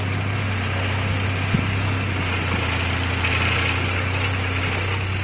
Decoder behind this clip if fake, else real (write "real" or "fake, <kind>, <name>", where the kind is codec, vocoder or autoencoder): real